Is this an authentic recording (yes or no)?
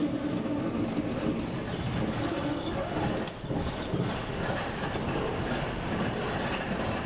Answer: yes